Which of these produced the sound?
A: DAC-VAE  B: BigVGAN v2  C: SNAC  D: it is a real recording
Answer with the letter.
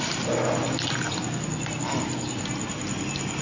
D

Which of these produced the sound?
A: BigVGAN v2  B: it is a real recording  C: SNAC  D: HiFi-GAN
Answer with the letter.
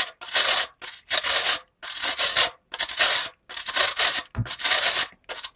B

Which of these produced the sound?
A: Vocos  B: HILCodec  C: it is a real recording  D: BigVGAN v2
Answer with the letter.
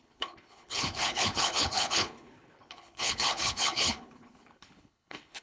B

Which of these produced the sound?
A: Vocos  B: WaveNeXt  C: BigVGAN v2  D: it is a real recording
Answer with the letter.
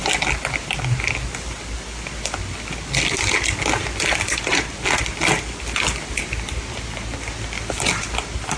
D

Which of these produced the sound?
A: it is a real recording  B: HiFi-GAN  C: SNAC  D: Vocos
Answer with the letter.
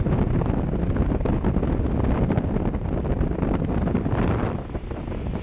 A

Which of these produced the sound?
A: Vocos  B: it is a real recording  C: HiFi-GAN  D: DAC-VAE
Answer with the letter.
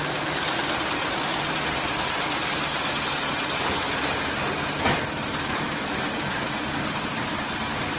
B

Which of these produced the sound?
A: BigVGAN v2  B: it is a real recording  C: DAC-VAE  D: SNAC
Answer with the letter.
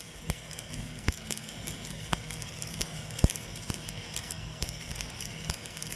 D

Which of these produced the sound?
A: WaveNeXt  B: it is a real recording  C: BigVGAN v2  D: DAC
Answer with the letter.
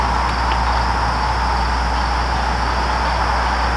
B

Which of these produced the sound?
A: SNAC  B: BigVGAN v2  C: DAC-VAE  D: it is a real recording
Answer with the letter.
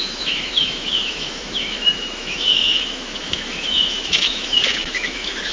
C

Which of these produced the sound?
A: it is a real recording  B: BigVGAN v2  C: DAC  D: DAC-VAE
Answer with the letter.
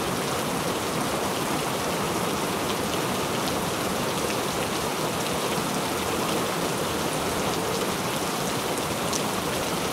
A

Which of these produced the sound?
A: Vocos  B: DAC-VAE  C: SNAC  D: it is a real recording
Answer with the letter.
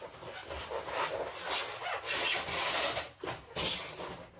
D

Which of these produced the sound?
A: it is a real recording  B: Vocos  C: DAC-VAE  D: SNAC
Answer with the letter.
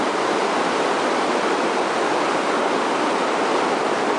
A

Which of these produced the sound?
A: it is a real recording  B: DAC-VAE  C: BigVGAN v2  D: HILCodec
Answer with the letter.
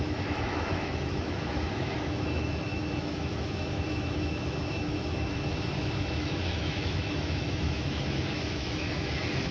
B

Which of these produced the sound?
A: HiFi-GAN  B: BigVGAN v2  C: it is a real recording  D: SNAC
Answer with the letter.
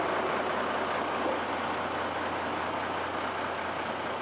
C